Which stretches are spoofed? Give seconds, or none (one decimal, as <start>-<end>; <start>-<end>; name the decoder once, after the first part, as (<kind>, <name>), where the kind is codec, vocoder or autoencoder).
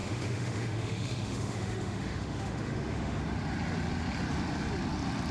0.0-3.2 (autoencoder, DAC-VAE)